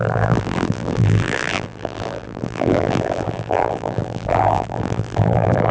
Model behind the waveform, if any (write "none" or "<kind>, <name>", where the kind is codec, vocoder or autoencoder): vocoder, BigVGAN v2